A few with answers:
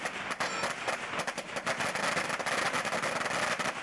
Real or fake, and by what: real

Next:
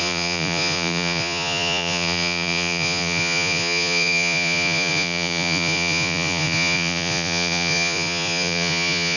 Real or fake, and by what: fake, vocoder, Vocos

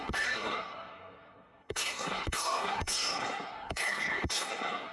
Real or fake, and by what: fake, codec, SNAC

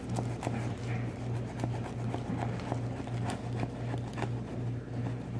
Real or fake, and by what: real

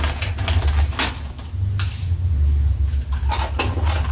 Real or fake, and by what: real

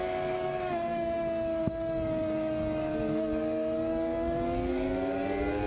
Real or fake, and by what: fake, codec, DAC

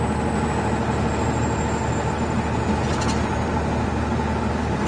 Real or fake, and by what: real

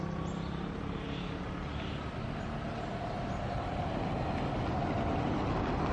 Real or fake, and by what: real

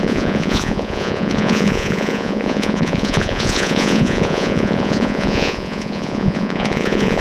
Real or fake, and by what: fake, vocoder, Vocos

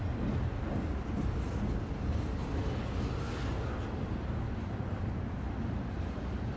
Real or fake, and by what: real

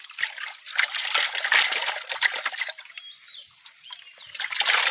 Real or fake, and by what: real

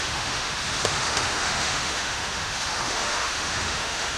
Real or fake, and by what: fake, autoencoder, DAC-VAE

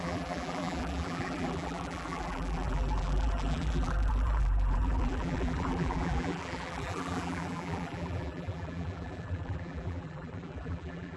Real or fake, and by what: fake, vocoder, BigVGAN v2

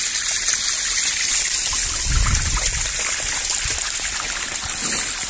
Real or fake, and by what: real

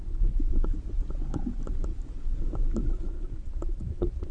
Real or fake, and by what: real